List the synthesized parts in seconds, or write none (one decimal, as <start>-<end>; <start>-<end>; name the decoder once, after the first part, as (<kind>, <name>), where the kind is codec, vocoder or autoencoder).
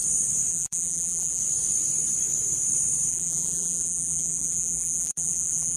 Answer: 0.5-1.4 (vocoder, BigVGAN v2); 3.1-5.8